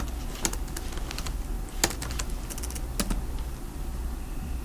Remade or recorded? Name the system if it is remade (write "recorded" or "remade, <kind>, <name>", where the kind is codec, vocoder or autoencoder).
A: recorded